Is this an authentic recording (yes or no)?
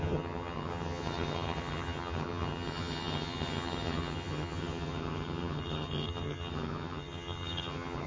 no